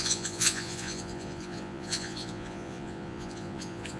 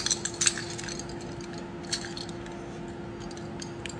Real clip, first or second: second